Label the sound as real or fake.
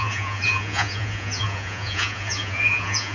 fake